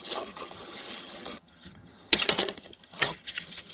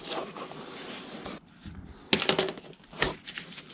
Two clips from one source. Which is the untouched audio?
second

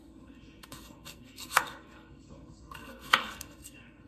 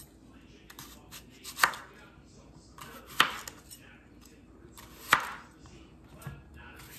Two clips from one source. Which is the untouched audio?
second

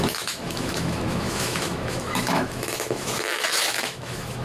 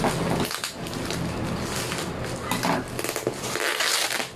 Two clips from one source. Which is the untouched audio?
second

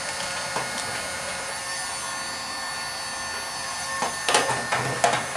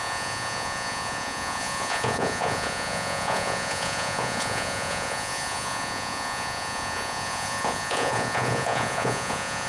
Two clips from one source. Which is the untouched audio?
first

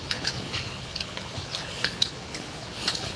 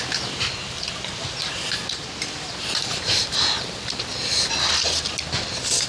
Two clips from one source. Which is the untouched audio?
second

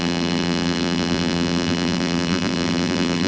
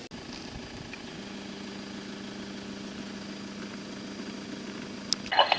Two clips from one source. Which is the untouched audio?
second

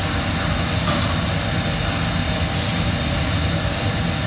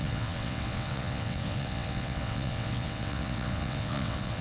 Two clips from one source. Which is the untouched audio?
first